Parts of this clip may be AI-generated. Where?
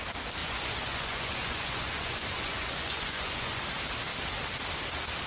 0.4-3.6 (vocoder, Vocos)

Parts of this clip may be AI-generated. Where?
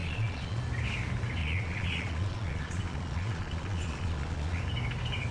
0.0-0.6 (vocoder, Vocos); 1.4-4.6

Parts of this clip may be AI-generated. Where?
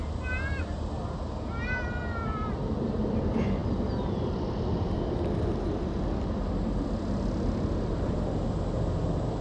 none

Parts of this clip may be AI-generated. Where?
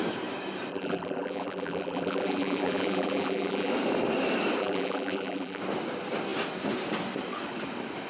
0.7-3.7 (vocoder, BigVGAN v2); 4.6-5.6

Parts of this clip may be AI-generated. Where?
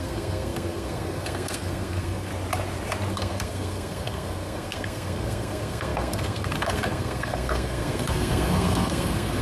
0.0-2.3 (codec, SNAC); 3.1-9.4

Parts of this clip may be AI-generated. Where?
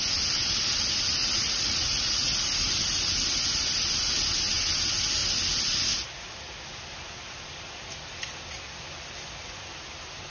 1.2-2.3 (vocoder, Vocos)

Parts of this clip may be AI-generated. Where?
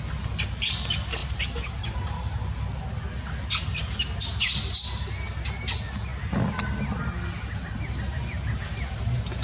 1.2-2.4 (vocoder, BigVGAN v2)